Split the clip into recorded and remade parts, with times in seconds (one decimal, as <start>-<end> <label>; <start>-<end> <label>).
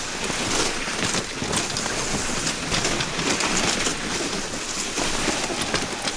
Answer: 0.0-6.2 recorded